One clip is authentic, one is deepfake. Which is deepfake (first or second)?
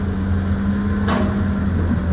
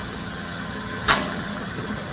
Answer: second